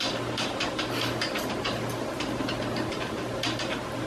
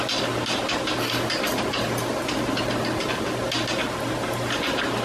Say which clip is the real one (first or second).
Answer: second